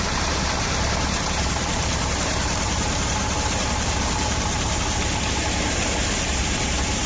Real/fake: fake